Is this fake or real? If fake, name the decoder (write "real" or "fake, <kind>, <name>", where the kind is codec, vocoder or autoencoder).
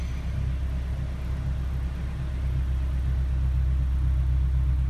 real